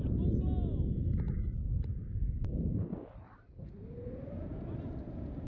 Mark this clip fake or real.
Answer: real